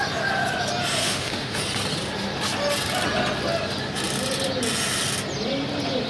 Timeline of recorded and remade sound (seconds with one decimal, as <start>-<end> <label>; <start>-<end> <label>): 0.0-1.0 recorded; 1.0-1.6 remade; 1.6-6.1 recorded

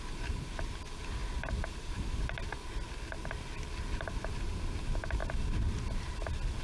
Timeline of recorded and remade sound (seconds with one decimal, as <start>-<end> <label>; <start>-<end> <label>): 0.0-6.6 recorded

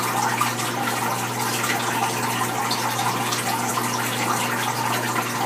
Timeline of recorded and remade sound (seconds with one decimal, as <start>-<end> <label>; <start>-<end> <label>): 0.0-5.5 recorded

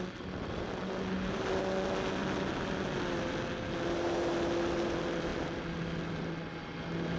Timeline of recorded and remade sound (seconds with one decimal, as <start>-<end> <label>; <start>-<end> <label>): 0.0-7.2 recorded

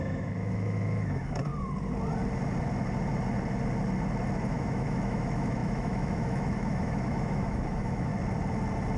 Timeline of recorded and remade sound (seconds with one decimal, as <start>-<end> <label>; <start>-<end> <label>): 0.0-1.5 remade; 1.5-4.5 recorded; 4.5-8.1 remade; 8.1-9.0 recorded

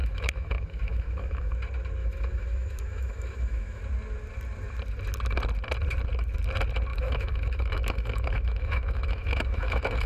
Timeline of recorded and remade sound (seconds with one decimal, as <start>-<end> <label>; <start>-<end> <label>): 0.0-1.5 remade; 1.5-2.0 recorded; 2.0-3.8 remade; 3.8-6.9 recorded; 6.9-10.1 remade